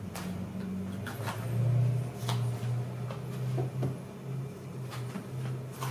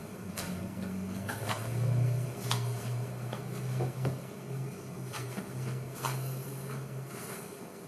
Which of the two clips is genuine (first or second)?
first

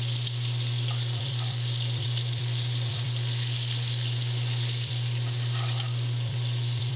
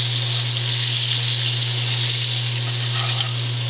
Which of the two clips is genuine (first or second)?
second